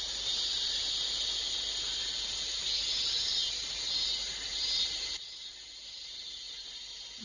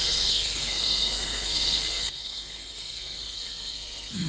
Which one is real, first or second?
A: first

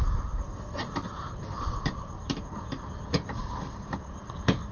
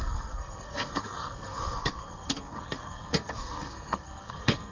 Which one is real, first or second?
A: first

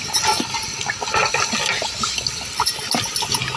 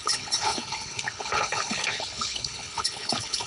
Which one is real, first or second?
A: first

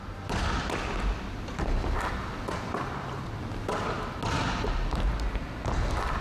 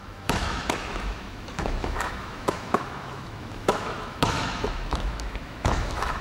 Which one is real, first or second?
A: first